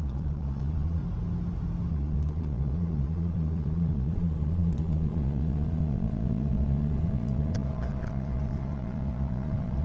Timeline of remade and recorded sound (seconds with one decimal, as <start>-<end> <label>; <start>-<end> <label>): 0.0-1.0 remade; 1.0-1.9 recorded; 1.9-9.8 remade